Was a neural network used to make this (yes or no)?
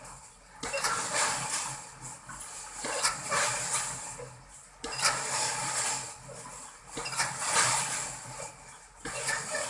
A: no